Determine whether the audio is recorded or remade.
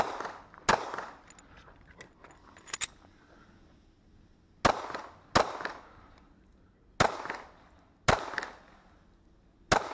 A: recorded